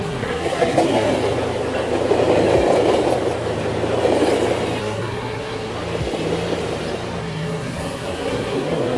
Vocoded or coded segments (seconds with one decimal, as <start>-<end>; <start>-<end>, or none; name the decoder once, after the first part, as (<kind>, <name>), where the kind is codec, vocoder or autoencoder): 0.0-1.1 (codec, SNAC); 4.8-5.7; 7.2-9.0